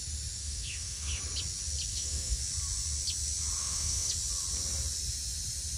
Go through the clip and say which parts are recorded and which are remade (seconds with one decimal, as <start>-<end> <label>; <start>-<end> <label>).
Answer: 0.0-0.4 recorded; 0.4-1.2 remade; 1.2-1.9 recorded; 1.9-2.4 remade; 2.4-3.6 recorded; 3.6-4.1 remade; 4.1-5.8 recorded